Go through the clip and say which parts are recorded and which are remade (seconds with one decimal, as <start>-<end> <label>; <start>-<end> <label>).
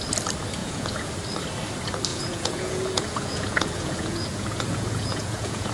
0.0-0.6 recorded; 0.6-1.1 remade; 1.1-2.1 recorded; 2.1-5.7 remade